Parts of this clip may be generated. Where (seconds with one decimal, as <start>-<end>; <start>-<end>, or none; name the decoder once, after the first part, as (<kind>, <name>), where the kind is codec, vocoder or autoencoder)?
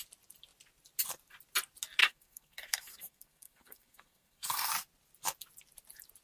2.0-4.7 (codec, SNAC)